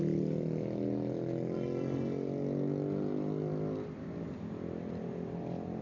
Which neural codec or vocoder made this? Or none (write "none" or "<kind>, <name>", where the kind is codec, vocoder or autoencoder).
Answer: none